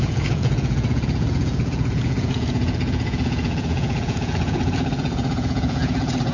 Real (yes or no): no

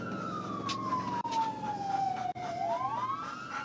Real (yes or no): yes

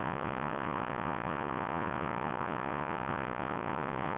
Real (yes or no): no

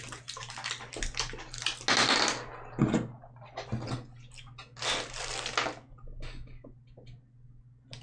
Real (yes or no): yes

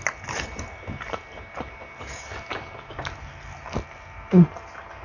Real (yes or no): yes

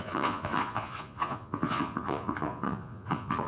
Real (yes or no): no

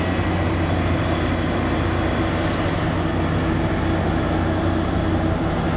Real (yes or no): yes